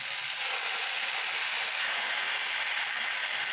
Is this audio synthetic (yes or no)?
no